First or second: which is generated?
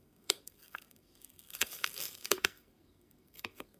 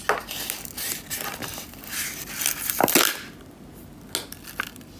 first